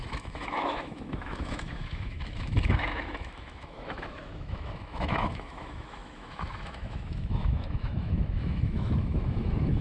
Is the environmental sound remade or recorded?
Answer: remade